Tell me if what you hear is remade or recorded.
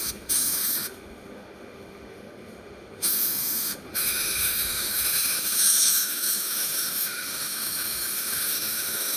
remade